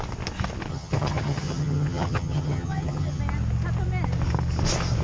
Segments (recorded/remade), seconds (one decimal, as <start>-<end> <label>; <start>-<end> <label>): 0.0-0.7 recorded; 0.7-3.2 remade; 3.2-5.0 recorded